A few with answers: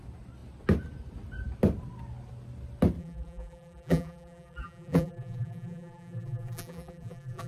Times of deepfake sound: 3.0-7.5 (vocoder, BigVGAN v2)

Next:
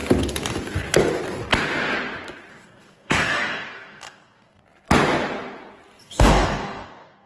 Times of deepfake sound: 2.5-4.6 (codec, DAC); 6.0-7.3

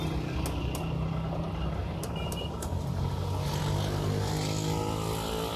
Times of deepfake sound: 1.8-2.9 (vocoder, BigVGAN v2)

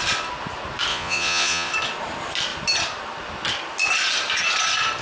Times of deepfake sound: 0.9-1.7 (vocoder, Vocos)

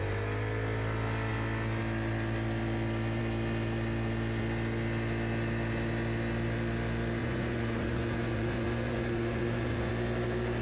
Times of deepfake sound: 7.2-9.9 (vocoder, Vocos)

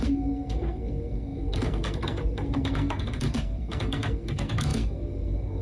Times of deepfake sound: 0.0-5.6 (codec, SNAC)